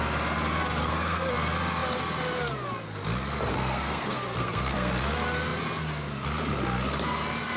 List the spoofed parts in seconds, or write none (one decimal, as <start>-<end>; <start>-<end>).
0.8-1.3; 3.5-4.9